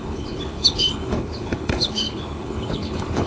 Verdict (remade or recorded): remade